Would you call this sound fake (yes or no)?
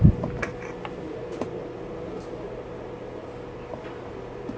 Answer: no